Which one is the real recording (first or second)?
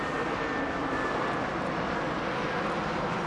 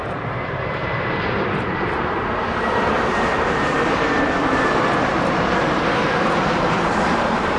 first